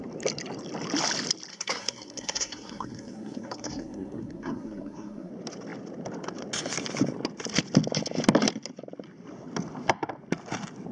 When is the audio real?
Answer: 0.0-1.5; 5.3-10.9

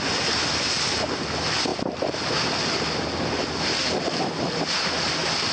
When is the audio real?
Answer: 0.0-5.5

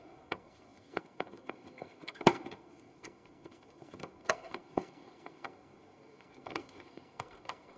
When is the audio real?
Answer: none

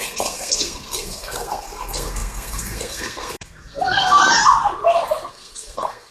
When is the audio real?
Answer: 4.2-5.3

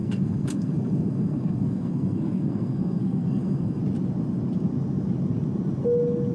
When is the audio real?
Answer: 3.8-6.3

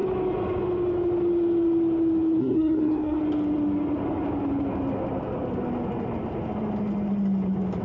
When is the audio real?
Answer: 0.0-2.4; 3.2-7.8

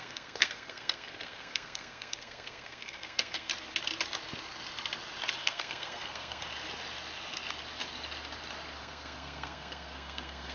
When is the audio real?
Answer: 3.5-5.4; 6.4-8.8